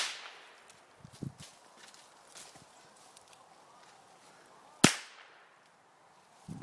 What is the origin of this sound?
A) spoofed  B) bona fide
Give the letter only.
B